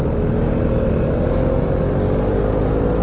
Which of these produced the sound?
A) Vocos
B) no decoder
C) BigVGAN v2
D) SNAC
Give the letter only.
B